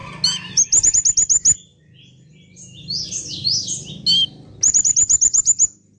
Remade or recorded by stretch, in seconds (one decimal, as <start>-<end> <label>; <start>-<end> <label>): 0.0-6.0 recorded